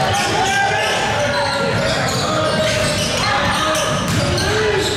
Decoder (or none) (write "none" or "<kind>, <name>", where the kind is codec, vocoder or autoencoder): none